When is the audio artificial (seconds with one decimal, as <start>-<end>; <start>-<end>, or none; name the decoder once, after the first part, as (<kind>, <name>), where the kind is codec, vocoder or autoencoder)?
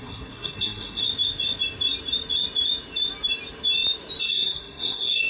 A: 0.0-1.0 (codec, SNAC); 4.2-5.3